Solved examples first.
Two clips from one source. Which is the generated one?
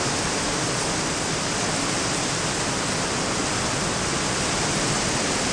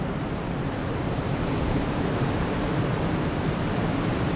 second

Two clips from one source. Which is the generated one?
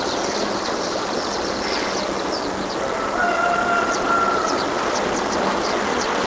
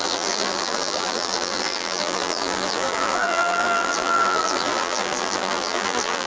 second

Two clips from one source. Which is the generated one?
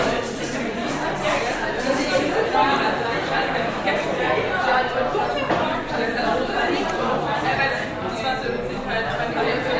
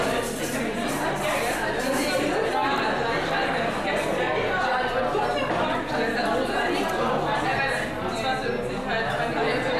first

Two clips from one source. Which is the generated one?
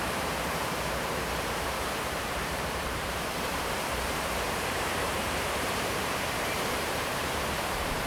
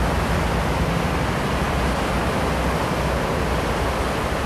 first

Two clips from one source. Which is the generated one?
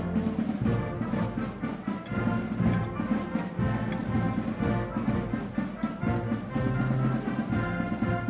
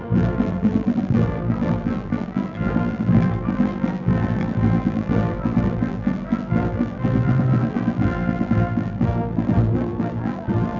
second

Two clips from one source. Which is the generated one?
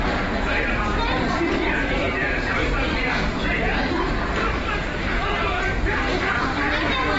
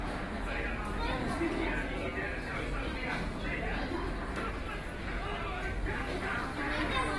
first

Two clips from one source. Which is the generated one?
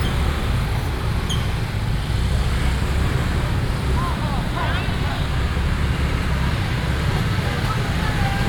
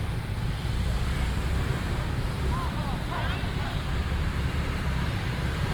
second